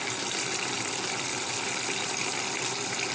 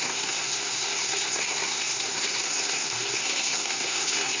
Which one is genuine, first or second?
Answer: first